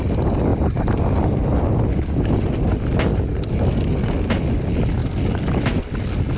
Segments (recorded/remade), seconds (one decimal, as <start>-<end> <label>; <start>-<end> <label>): 0.0-0.5 recorded; 0.5-4.3 remade; 4.3-6.4 recorded